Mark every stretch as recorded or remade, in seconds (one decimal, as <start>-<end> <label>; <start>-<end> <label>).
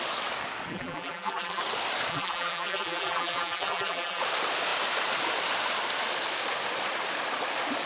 0.0-0.7 recorded; 0.7-1.6 remade; 1.6-2.1 recorded; 2.1-4.2 remade; 4.2-7.9 recorded